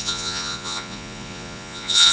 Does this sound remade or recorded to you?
remade